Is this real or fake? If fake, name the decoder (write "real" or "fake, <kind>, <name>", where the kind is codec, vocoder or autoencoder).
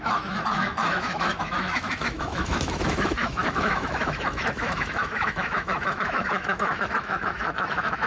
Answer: fake, autoencoder, DAC-VAE